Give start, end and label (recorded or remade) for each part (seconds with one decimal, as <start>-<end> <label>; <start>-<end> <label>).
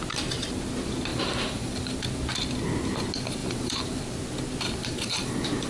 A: 0.0-1.1 recorded; 1.1-2.0 remade; 2.0-3.4 recorded; 3.4-4.0 remade; 4.0-4.8 recorded; 4.8-5.7 remade